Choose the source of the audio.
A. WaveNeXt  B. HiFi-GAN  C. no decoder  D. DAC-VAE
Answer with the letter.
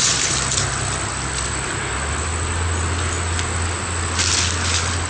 C